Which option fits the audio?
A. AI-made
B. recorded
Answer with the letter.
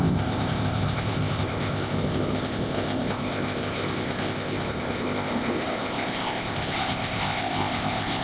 A